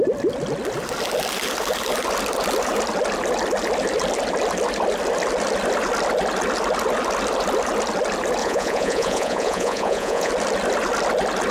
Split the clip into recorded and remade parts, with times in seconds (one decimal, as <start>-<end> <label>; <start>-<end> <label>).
0.0-8.4 recorded; 8.4-10.3 remade; 10.3-11.5 recorded